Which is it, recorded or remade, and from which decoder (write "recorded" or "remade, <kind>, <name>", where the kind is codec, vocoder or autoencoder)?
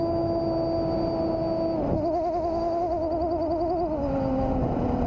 recorded